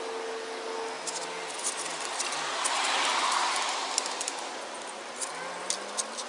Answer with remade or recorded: recorded